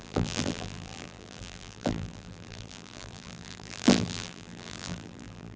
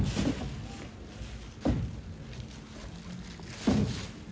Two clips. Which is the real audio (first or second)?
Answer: second